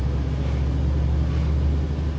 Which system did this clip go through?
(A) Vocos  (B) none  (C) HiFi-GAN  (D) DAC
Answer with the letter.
B